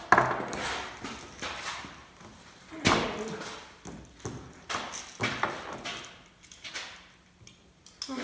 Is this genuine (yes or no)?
yes